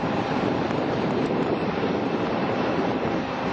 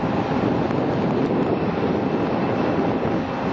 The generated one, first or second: first